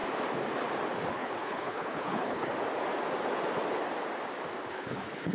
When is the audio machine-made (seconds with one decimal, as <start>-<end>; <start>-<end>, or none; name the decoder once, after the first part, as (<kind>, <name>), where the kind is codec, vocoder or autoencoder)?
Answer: 1.1-2.5 (codec, HILCodec); 4.7-5.3